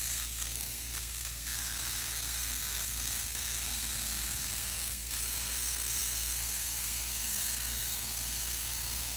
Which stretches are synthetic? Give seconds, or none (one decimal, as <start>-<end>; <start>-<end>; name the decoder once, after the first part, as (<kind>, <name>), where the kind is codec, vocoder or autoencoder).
0.0-9.2 (codec, SNAC)